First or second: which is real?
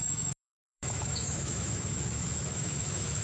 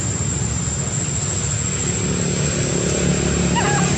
second